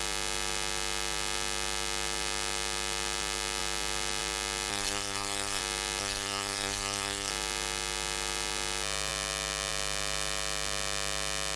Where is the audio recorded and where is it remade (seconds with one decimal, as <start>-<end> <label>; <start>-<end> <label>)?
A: 0.0-4.7 recorded; 4.7-5.6 remade; 5.6-6.0 recorded; 6.0-7.3 remade; 7.3-11.6 recorded